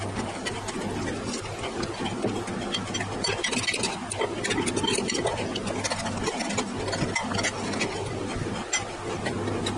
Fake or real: real